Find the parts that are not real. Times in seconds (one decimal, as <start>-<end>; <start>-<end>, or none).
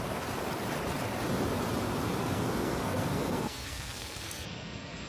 2.2-5.1